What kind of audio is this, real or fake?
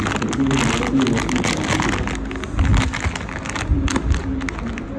real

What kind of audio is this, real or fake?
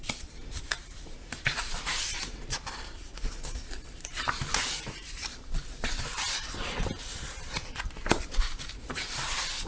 fake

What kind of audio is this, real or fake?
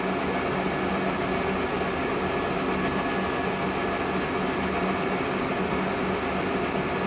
real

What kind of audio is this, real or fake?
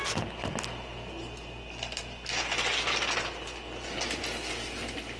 real